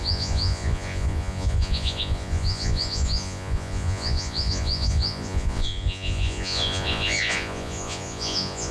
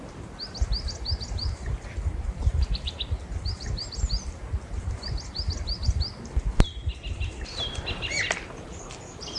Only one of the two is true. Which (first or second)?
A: second